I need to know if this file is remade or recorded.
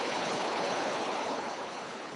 remade